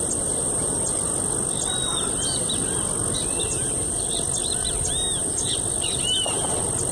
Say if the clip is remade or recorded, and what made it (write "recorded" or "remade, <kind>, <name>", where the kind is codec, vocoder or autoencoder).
recorded